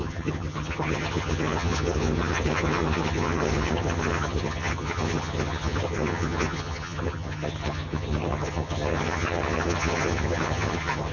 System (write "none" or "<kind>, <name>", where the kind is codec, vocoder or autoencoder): vocoder, HiFi-GAN